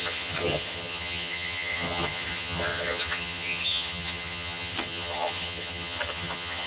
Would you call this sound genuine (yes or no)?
no